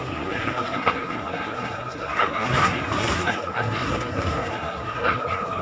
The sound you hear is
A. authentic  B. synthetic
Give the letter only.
B